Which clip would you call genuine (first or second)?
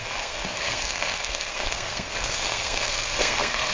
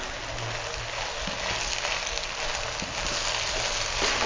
second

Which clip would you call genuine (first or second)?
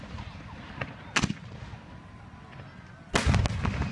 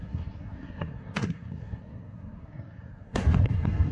first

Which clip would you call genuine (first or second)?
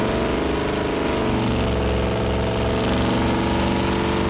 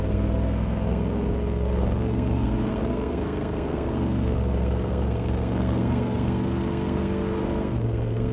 first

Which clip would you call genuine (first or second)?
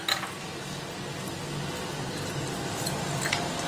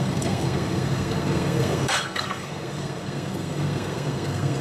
first